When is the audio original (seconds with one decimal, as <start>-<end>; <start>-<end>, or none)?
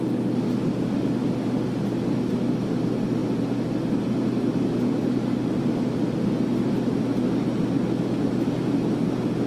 0.0-9.5